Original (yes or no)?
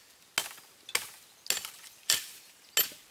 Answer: yes